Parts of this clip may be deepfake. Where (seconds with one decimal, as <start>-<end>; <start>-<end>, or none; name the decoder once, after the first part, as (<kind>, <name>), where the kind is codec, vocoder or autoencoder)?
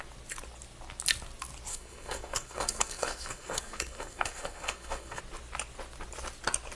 1.7-5.2 (codec, SNAC)